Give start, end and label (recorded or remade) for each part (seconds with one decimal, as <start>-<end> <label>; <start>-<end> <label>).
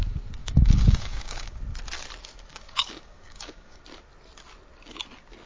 0.0-0.4 recorded; 0.4-1.6 remade; 1.6-2.5 recorded; 2.5-3.8 remade; 3.8-5.5 recorded